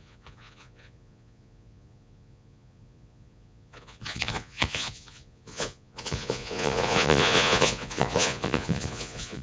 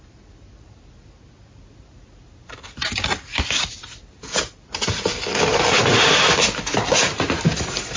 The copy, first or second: first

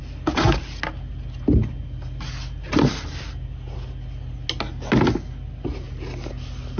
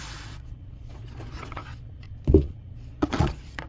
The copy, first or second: second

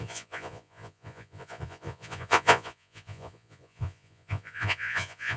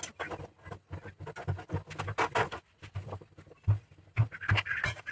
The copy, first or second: first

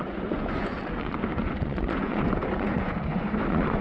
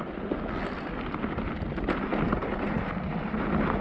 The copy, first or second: first